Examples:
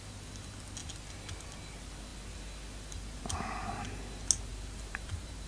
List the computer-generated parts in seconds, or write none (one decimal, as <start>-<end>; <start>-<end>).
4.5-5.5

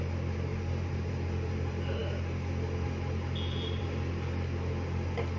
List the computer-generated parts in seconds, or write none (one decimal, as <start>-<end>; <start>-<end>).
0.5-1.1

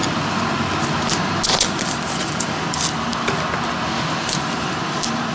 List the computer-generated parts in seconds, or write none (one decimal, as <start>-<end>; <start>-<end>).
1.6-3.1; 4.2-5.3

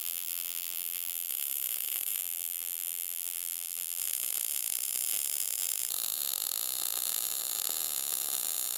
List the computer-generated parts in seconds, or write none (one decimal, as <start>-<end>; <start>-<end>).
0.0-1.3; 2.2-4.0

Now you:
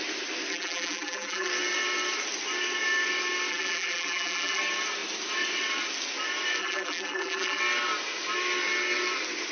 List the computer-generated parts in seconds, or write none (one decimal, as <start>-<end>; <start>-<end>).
0.5-1.5; 3.5-4.6; 6.6-7.6

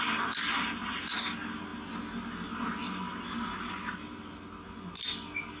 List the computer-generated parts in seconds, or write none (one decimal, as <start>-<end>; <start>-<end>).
none

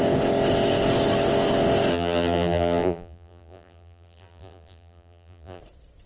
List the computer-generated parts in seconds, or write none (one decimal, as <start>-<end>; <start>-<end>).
1.9-5.6